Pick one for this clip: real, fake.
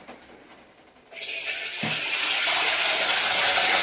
real